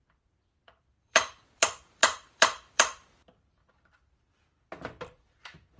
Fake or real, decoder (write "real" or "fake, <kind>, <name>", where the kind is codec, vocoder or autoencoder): fake, vocoder, BigVGAN v2